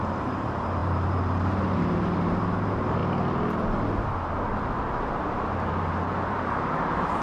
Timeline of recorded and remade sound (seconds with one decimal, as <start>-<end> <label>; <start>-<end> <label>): 0.0-3.0 remade; 3.0-5.1 recorded; 5.1-7.2 remade